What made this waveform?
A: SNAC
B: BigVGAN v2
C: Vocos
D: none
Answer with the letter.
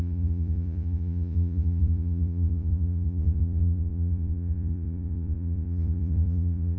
C